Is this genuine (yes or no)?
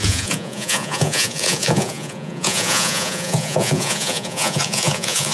no